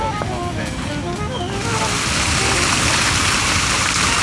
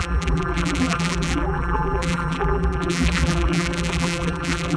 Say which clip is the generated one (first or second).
second